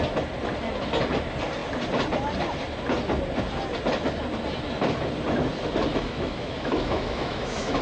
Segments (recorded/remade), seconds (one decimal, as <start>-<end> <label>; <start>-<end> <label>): 0.0-5.9 recorded; 5.9-7.8 remade